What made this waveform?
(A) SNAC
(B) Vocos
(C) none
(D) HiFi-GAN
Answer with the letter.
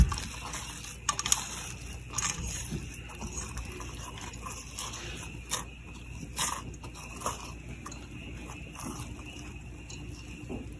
C